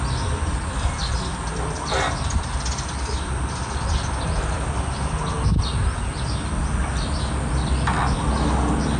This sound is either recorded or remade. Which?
recorded